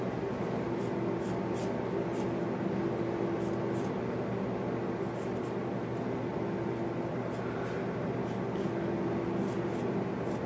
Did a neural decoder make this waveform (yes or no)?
no